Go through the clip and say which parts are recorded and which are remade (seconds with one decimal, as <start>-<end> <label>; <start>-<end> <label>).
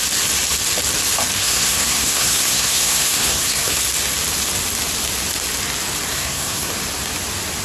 0.0-1.4 recorded; 1.4-3.8 remade; 3.8-6.1 recorded; 6.1-6.7 remade; 6.7-7.6 recorded